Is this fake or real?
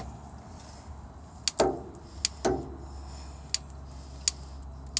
real